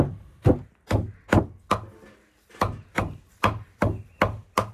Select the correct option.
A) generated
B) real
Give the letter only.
B